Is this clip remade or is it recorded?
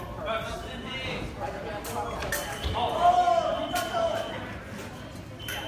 recorded